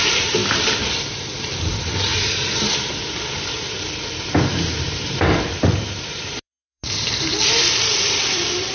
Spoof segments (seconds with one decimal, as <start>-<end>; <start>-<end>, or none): 0.0-2.1; 3.5-8.7